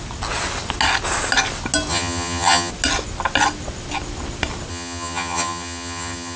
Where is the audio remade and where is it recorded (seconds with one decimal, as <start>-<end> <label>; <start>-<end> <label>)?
0.0-1.9 recorded; 1.9-2.7 remade; 2.7-4.7 recorded; 4.7-6.4 remade